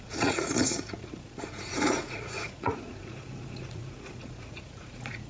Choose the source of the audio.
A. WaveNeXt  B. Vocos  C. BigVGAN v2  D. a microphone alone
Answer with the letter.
B